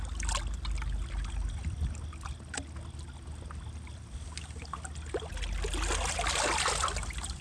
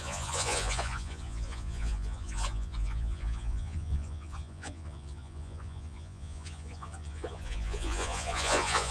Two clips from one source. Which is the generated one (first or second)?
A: second